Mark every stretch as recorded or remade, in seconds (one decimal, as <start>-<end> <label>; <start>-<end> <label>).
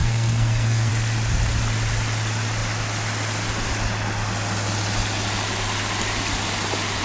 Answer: 0.0-0.9 remade; 0.9-7.0 recorded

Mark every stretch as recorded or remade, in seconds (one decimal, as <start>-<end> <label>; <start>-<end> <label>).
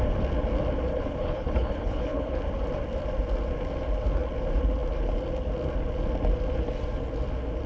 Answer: 0.0-0.9 recorded; 0.9-2.4 remade; 2.4-7.7 recorded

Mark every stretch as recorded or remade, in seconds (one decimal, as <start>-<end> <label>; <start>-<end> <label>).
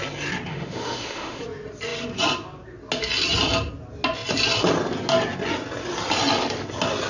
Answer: 0.0-0.5 recorded; 0.5-1.4 remade; 1.4-7.1 recorded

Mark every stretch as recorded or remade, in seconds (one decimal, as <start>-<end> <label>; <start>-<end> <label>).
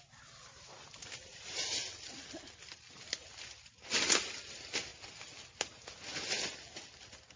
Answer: 0.0-7.4 recorded